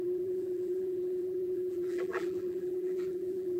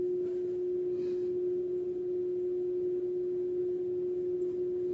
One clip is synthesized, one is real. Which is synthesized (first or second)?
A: first